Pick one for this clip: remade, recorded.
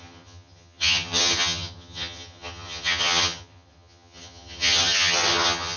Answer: remade